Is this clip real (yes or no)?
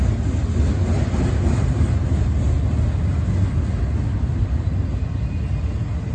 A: yes